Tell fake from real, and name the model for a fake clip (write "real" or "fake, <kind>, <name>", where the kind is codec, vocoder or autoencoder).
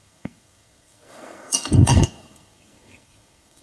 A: fake, codec, SNAC